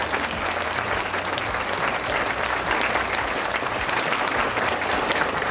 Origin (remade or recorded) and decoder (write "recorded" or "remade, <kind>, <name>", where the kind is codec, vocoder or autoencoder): recorded